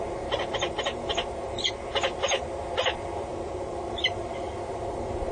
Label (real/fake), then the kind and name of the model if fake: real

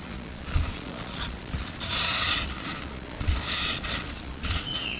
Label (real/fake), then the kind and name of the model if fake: fake, vocoder, Vocos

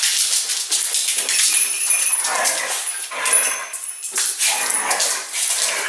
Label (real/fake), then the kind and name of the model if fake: real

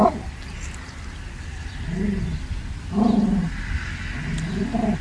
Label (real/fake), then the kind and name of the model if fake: real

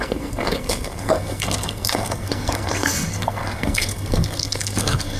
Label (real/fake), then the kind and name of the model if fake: fake, codec, SNAC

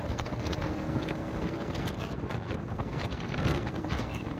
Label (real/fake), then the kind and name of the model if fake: fake, codec, SNAC